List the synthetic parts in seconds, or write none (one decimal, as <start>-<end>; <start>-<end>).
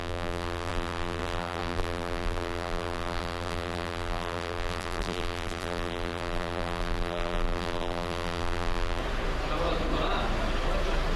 0.0-9.0